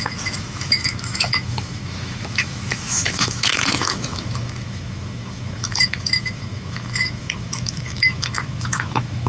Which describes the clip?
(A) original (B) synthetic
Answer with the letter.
B